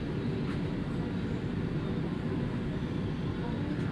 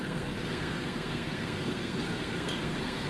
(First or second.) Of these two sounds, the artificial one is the second